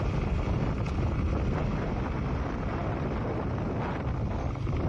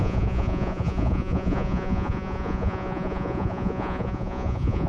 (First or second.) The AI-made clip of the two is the second